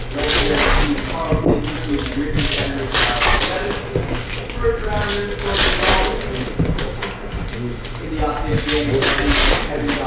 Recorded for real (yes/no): yes